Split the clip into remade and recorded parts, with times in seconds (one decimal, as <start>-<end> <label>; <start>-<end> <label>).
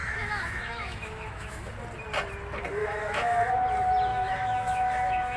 0.0-1.7 remade; 1.7-2.8 recorded; 2.8-3.5 remade; 3.5-4.1 recorded; 4.1-5.4 remade